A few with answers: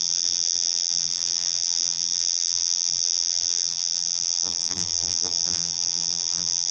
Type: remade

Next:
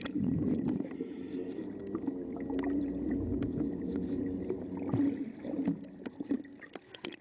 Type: remade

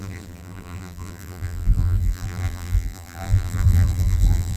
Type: remade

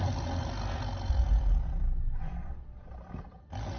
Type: recorded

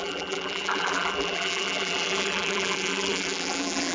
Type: remade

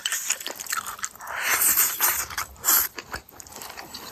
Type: remade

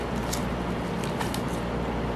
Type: recorded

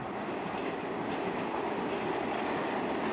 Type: recorded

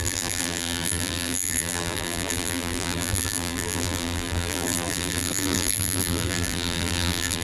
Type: remade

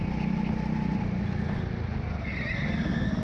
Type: recorded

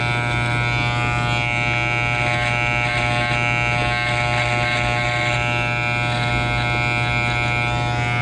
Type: recorded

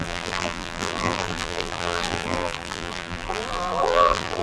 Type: remade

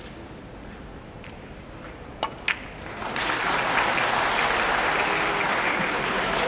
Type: recorded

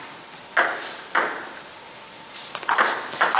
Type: recorded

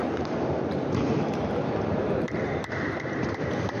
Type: remade